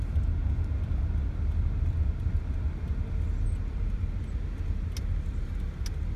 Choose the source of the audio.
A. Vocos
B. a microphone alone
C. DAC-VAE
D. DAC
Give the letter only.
B